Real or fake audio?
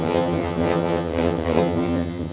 fake